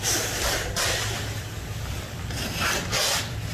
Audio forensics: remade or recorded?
remade